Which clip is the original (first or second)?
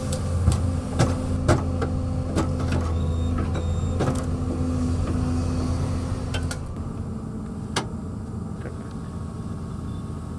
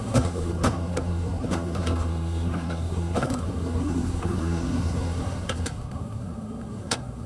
first